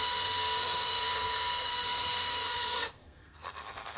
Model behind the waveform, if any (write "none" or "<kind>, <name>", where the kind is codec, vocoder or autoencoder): codec, SNAC